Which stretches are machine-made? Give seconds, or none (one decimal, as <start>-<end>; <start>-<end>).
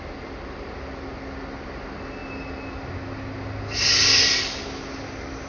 none